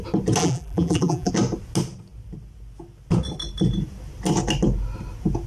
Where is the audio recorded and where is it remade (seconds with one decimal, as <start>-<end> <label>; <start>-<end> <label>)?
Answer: 0.0-0.4 recorded; 0.4-1.3 remade; 1.3-5.5 recorded